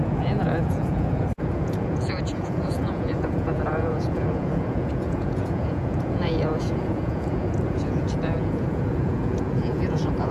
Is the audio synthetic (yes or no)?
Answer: yes